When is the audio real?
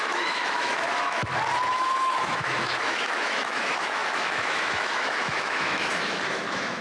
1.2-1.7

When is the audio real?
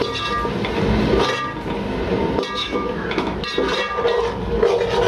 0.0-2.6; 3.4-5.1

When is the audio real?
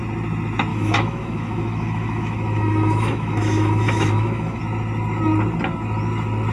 0.0-0.7; 4.6-6.5